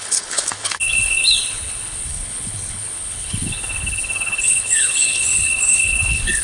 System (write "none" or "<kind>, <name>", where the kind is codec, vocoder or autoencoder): codec, HILCodec